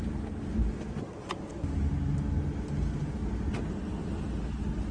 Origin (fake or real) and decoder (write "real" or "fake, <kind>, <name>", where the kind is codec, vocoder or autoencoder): real